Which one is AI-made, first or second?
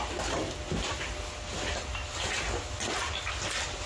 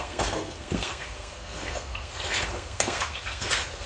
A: second